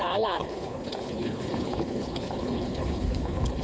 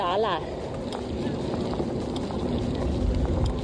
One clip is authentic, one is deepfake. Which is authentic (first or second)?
second